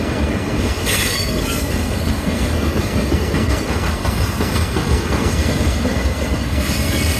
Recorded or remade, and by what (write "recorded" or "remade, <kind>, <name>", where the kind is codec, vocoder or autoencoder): remade, codec, SNAC